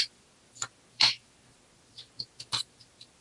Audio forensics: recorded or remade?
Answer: recorded